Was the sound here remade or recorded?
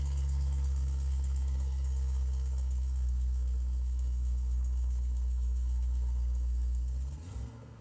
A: remade